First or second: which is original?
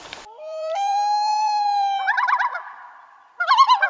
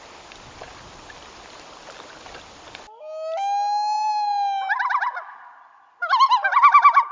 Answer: second